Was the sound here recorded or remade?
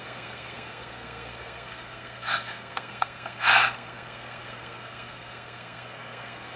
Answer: remade